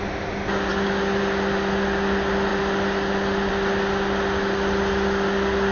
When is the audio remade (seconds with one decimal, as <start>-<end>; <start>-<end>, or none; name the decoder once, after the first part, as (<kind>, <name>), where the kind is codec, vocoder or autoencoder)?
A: none